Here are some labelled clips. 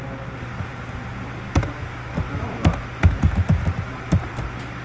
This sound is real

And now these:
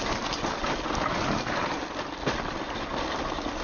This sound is real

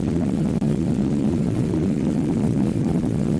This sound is fake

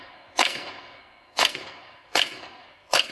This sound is fake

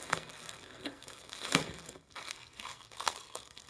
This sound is fake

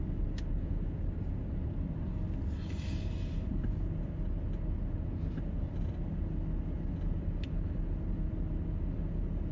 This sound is real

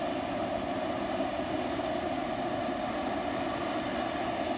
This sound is real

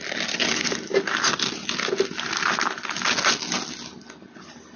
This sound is real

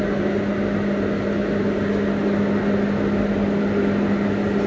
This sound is real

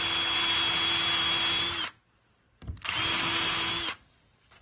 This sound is real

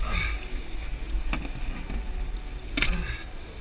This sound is real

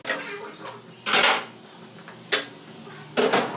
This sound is real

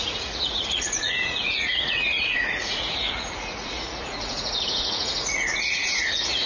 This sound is fake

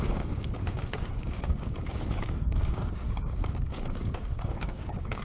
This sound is fake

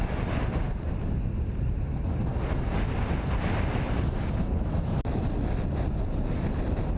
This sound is real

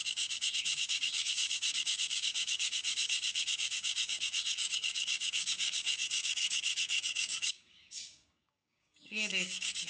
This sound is fake